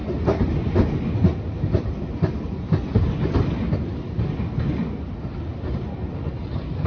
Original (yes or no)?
yes